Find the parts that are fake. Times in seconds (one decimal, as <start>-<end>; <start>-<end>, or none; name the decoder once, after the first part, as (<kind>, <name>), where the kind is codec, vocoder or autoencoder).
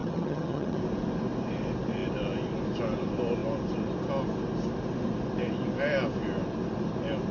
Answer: 0.0-0.8 (vocoder, HiFi-GAN)